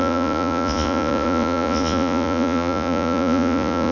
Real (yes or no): no